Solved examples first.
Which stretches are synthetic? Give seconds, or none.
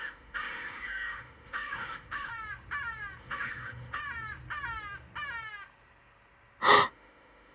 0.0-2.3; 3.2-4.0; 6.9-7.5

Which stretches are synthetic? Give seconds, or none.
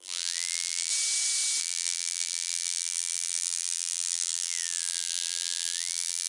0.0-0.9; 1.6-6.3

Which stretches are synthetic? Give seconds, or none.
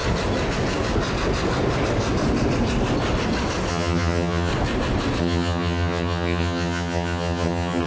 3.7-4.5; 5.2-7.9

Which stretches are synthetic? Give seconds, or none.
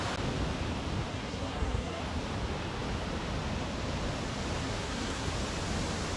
1.1-2.0; 4.6-5.3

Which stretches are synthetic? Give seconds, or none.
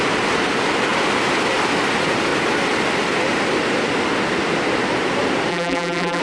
5.5-6.2